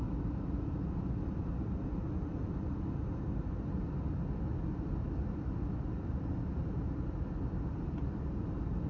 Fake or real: real